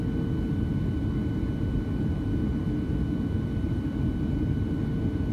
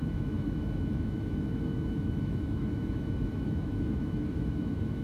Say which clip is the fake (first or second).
second